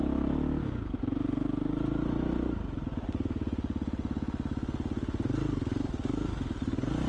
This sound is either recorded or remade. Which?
recorded